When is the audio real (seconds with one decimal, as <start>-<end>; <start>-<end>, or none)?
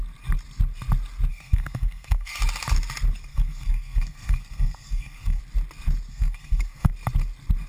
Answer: 0.0-1.3; 2.4-3.3; 5.4-6.1; 6.9-7.7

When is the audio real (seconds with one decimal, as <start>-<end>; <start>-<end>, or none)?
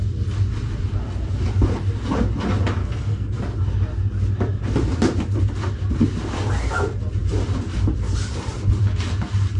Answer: 0.0-2.8; 3.4-9.6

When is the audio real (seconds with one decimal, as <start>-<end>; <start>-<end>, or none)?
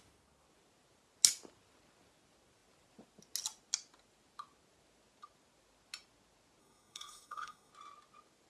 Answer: 0.0-6.6; 7.7-8.5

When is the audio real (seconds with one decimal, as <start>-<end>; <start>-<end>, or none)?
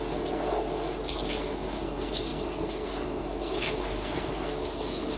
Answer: none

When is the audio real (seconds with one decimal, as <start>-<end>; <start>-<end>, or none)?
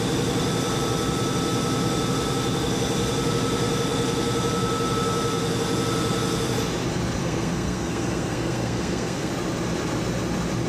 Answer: 0.0-7.2; 9.3-10.7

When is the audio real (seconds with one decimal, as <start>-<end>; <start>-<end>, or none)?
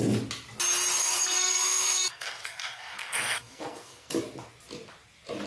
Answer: 0.0-1.0; 4.1-5.5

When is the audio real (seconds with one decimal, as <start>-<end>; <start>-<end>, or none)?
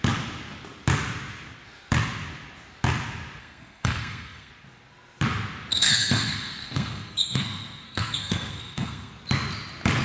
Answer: 0.0-3.4; 4.5-5.7; 9.1-10.0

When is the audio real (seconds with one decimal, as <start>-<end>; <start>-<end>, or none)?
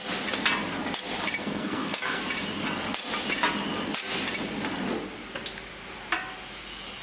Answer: 0.0-1.4; 2.2-7.0